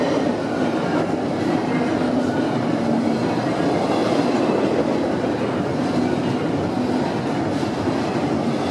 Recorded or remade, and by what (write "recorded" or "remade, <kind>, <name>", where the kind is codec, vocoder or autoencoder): recorded